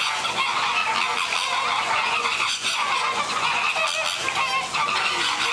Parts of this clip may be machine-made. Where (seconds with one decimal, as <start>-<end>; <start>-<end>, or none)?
0.0-0.8; 1.8-3.8; 5.0-5.5